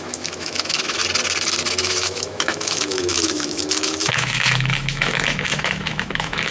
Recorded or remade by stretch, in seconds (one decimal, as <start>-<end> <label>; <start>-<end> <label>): 0.0-1.0 remade; 1.0-1.8 recorded; 1.8-6.5 remade